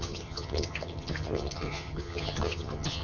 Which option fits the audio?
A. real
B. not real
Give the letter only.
B